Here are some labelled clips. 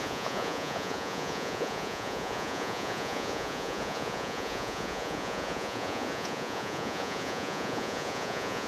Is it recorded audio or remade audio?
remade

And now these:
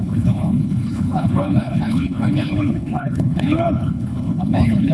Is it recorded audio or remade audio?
remade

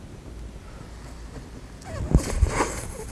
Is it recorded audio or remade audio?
recorded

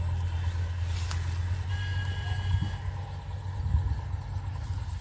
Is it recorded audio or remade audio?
recorded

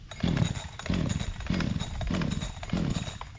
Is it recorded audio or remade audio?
recorded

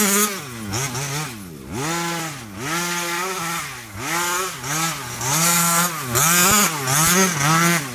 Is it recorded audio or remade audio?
recorded